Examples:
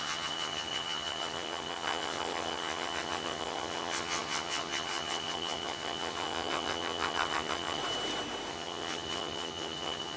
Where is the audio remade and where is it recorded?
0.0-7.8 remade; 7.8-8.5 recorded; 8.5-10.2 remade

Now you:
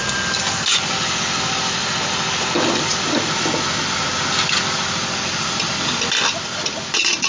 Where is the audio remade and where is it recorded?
0.0-7.3 recorded

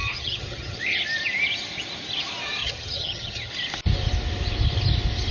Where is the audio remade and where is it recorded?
0.0-0.8 remade; 0.8-2.6 recorded; 2.6-3.5 remade; 3.5-5.3 recorded

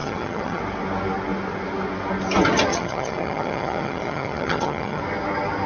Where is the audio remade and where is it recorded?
0.0-0.6 remade; 0.6-2.7 recorded; 2.7-5.0 remade; 5.0-5.7 recorded

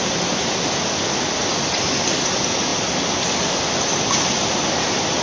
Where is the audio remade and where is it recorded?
0.0-5.2 recorded